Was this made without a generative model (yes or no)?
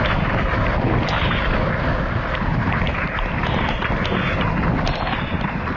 yes